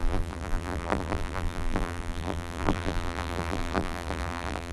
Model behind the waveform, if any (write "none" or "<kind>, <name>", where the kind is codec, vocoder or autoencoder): vocoder, BigVGAN v2